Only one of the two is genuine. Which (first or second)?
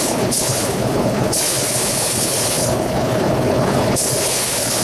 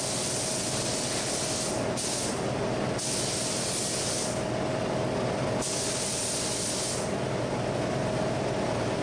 second